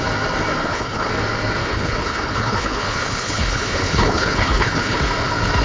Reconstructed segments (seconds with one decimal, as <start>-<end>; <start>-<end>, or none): 0.6-1.1; 1.6-5.0